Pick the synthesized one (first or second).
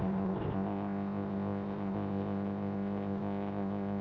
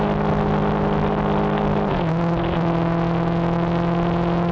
first